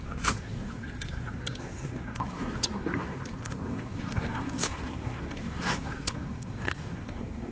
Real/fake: fake